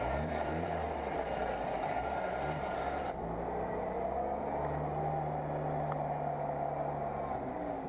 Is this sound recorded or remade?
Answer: recorded